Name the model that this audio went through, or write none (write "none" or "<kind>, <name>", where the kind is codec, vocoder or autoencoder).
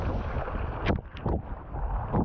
none